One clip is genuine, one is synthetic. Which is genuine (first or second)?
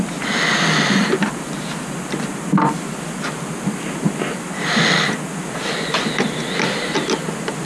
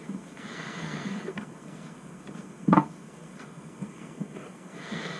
first